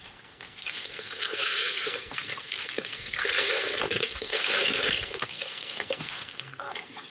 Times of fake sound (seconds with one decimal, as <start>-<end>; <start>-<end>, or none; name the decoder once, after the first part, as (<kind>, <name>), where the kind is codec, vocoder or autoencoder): 0.0-7.1 (codec, SNAC)